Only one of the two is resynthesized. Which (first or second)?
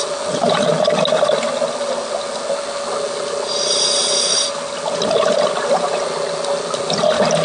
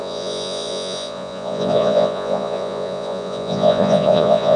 second